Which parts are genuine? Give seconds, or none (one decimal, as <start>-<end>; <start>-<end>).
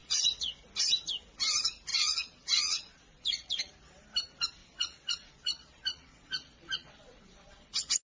0.6-1.9; 3.7-4.6